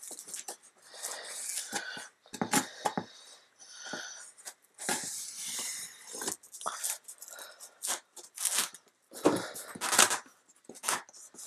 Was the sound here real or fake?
real